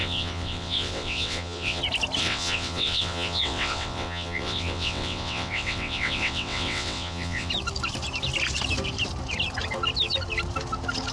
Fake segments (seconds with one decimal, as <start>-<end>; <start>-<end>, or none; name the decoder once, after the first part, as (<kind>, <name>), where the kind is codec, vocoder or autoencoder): 0.0-1.8 (vocoder, WaveNeXt); 2.2-7.5

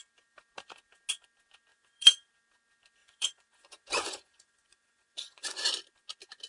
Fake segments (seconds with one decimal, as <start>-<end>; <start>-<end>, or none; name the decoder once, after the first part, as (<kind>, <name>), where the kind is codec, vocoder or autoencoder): 1.7-2.3 (vocoder, Vocos); 3.0-5.7

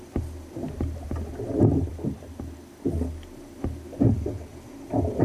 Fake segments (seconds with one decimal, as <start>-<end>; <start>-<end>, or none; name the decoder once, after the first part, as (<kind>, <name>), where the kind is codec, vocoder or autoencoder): none

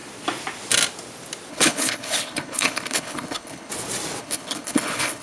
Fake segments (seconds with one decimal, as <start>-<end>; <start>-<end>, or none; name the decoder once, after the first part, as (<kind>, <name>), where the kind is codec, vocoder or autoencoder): 1.5-3.7 (codec, HILCodec); 4.2-5.2

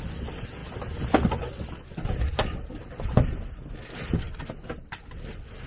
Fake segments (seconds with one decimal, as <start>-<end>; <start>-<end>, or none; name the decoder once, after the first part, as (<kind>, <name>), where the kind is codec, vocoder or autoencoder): none